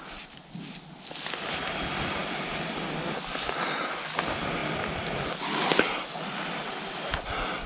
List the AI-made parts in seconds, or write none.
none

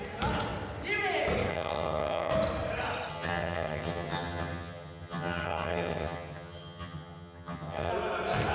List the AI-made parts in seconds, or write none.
1.5-2.3 (vocoder, HiFi-GAN); 3.1-7.9

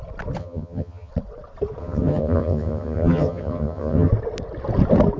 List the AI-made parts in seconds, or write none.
0.4-1.1 (vocoder, HiFi-GAN); 1.8-4.1

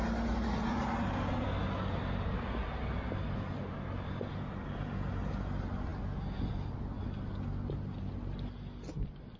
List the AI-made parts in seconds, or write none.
none

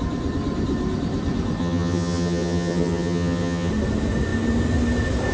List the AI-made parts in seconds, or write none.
1.6-3.7 (vocoder, HiFi-GAN)